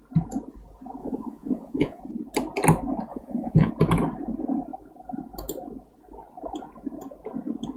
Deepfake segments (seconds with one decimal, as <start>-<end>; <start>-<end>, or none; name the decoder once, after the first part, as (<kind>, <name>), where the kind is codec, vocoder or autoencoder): 1.0-2.0 (vocoder, Vocos); 3.1-3.7